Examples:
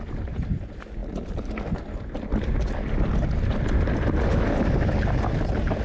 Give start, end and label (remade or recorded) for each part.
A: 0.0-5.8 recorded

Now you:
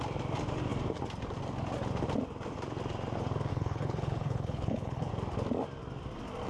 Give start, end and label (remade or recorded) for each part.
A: 0.0-3.5 recorded; 3.5-5.1 remade; 5.1-6.5 recorded